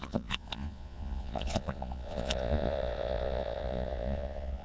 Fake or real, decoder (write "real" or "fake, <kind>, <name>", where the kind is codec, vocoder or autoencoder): fake, vocoder, Vocos